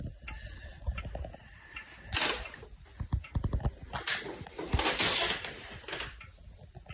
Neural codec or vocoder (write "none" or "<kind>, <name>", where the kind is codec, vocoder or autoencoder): none